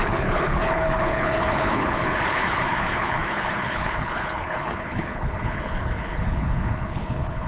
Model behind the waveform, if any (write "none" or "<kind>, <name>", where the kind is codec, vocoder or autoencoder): codec, HILCodec